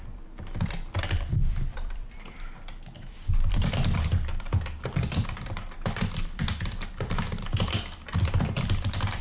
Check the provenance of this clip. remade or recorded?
remade